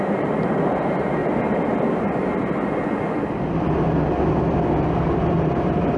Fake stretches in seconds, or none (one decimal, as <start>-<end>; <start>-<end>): 0.0-1.2; 4.8-6.0